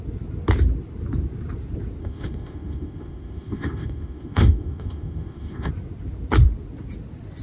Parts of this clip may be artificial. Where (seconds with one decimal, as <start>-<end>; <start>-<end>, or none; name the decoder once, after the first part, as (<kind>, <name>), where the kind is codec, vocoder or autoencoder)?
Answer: 2.0-5.7 (autoencoder, DAC-VAE)